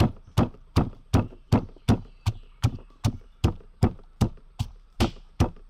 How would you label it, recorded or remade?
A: remade